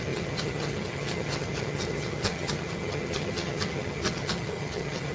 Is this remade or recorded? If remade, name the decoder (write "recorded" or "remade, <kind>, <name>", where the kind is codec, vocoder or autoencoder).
remade, vocoder, HiFi-GAN